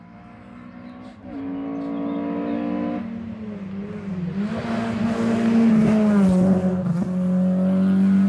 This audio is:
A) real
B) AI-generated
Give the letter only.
A